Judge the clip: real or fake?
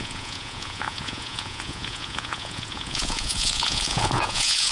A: fake